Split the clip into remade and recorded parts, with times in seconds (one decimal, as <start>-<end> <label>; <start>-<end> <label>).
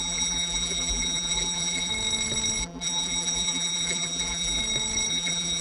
0.0-1.9 remade; 1.9-2.6 recorded; 2.6-4.6 remade; 4.6-5.1 recorded; 5.1-5.6 remade